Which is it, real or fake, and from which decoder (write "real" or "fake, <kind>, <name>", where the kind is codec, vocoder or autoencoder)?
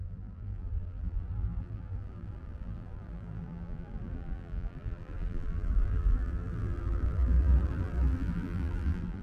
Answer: fake, vocoder, BigVGAN v2